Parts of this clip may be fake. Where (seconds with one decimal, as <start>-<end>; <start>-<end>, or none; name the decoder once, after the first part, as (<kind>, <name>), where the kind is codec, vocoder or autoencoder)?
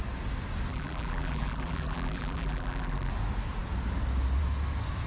0.7-3.1 (vocoder, BigVGAN v2)